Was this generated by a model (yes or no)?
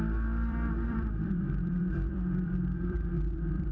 yes